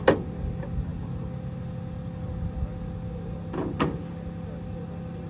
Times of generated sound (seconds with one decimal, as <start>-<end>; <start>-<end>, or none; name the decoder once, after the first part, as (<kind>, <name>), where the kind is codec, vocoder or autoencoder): none